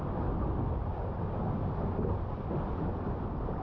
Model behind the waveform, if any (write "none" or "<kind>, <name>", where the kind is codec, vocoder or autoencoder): none